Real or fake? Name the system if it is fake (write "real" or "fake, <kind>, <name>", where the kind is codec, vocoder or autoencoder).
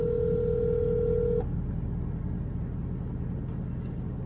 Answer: real